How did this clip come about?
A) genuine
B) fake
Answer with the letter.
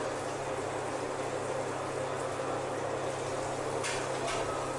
A